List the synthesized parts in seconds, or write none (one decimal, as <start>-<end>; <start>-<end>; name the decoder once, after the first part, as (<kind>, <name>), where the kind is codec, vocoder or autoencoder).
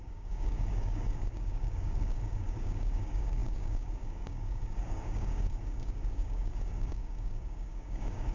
0.0-8.3 (codec, DAC)